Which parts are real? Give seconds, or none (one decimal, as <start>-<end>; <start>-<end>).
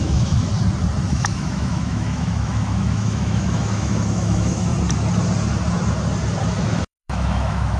0.5-1.1; 4.7-6.6